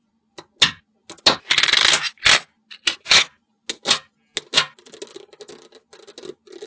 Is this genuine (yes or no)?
yes